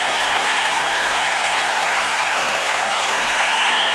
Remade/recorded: remade